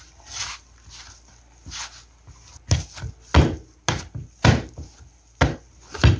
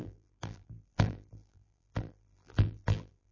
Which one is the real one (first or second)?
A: first